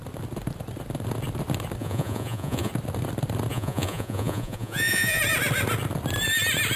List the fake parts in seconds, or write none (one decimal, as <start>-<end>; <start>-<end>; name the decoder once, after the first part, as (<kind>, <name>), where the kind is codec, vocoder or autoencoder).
1.8-2.7 (vocoder, Vocos); 3.5-5.2

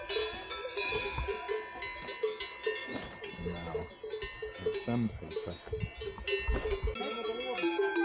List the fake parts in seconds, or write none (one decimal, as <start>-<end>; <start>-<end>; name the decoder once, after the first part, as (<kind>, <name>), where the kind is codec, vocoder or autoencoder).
0.5-1.0 (vocoder, BigVGAN v2); 2.8-3.9

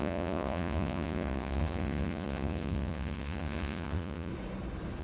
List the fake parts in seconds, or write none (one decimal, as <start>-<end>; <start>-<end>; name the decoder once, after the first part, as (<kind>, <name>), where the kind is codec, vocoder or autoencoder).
0.0-4.3 (vocoder, Vocos)

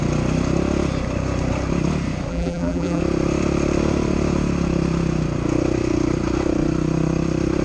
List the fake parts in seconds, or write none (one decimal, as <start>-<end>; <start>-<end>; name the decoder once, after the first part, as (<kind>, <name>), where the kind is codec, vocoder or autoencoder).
2.3-3.0 (vocoder, BigVGAN v2)

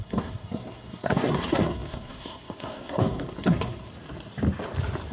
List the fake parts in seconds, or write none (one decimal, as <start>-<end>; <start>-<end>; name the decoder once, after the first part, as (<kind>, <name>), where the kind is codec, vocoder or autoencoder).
0.0-3.9 (codec, SNAC)

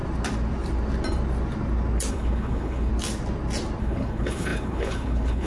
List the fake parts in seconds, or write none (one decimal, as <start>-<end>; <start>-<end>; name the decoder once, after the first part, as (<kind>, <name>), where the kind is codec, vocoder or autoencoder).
2.1-2.9 (codec, HILCodec); 3.8-5.5

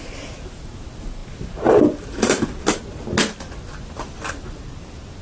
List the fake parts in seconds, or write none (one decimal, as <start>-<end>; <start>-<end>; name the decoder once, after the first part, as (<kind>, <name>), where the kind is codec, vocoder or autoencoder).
none

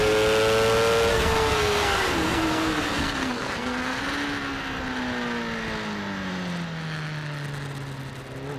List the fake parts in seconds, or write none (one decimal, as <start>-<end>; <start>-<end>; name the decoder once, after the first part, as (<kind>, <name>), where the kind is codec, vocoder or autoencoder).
1.1-4.0 (codec, SNAC)